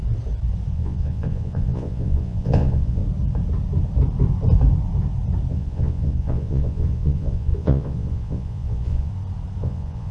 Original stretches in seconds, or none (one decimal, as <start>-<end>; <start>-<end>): 0.0-0.7; 3.0-5.5; 9.1-9.6